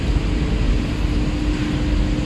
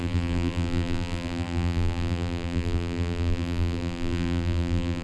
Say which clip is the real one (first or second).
first